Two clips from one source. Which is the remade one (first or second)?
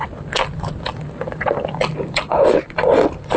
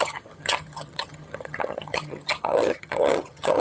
second